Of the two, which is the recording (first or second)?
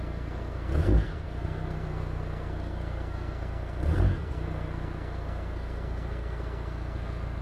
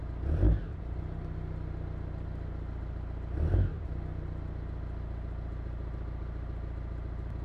second